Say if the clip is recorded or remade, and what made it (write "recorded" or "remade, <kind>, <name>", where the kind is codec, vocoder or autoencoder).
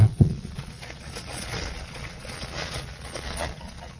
remade, vocoder, Vocos